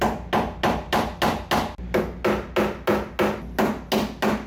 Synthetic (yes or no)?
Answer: no